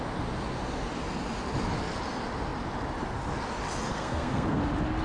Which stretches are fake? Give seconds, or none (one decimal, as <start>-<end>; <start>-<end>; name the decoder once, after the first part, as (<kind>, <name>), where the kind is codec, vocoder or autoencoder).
3.9-4.6 (codec, SNAC)